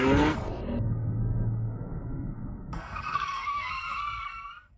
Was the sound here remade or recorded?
remade